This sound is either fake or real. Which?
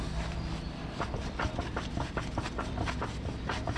real